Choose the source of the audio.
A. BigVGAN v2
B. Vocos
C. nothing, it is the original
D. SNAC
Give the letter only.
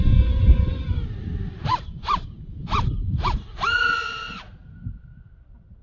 A